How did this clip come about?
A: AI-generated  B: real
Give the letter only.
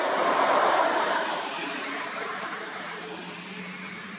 A